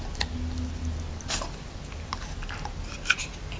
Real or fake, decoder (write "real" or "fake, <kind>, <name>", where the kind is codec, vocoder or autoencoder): real